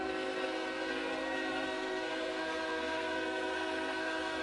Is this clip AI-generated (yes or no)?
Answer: yes